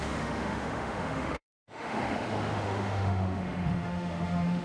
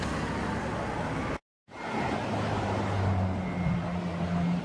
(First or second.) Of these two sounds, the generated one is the first